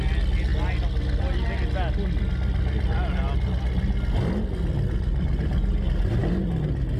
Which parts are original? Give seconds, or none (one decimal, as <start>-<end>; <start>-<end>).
0.0-7.0